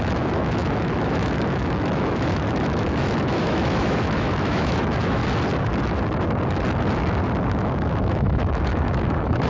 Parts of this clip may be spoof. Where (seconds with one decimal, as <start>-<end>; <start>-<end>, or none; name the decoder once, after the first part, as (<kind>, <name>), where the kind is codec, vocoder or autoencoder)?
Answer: 0.0-5.2 (autoencoder, DAC-VAE); 7.6-9.5